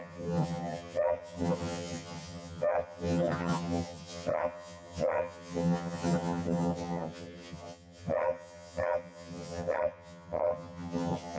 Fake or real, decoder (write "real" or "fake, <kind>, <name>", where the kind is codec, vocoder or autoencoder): fake, vocoder, HiFi-GAN